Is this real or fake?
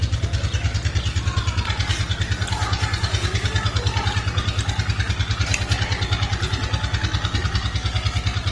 real